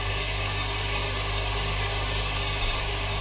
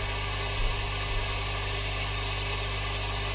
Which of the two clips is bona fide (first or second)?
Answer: second